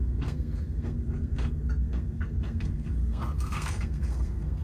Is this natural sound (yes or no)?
no